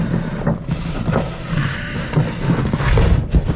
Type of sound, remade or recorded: recorded